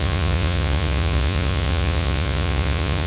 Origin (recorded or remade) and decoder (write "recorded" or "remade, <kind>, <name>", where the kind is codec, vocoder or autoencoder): remade, vocoder, Vocos